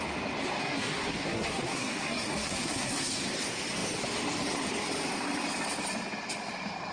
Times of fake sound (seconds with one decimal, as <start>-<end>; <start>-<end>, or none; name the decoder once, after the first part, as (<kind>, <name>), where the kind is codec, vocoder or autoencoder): 0.6-3.1 (codec, SNAC)